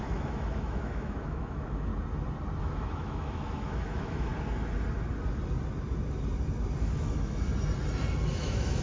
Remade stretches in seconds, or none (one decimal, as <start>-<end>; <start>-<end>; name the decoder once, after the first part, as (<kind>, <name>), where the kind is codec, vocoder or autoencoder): 0.0-1.9 (autoencoder, DAC-VAE); 2.6-4.3; 6.8-7.5; 8.3-8.8